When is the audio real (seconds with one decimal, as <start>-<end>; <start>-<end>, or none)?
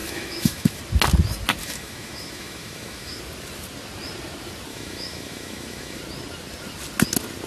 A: 0.8-1.6; 3.2-4.7; 6.0-7.5